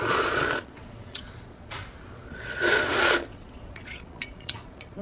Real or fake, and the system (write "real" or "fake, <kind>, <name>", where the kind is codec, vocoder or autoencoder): fake, vocoder, Vocos